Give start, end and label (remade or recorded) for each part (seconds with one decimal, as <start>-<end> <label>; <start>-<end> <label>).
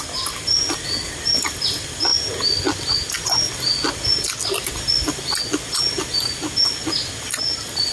0.0-7.9 recorded